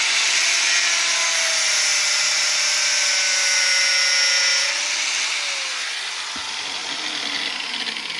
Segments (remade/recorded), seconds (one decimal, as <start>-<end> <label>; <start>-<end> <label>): 0.0-1.9 recorded; 1.9-3.9 remade; 3.9-8.2 recorded